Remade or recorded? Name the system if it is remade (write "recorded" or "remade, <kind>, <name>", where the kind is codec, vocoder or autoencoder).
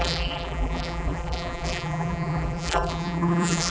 remade, vocoder, BigVGAN v2